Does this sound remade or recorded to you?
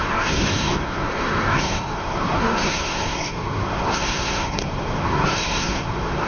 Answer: remade